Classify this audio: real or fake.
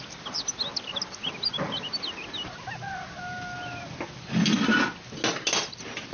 real